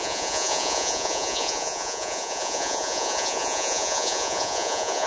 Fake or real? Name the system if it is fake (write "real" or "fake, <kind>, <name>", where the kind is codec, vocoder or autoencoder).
fake, vocoder, Vocos